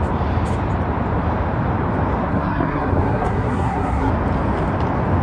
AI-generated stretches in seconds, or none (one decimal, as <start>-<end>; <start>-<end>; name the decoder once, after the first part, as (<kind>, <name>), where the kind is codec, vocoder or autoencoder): 2.3-4.1 (codec, SNAC)